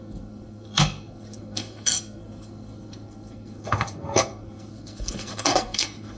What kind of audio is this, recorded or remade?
remade